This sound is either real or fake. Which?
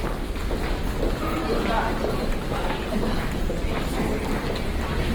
real